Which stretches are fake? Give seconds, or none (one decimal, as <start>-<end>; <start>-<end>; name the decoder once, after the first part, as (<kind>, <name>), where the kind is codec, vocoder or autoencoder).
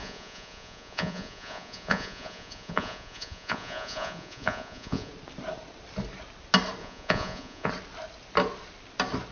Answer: 0.0-5.1 (vocoder, Vocos); 6.8-7.7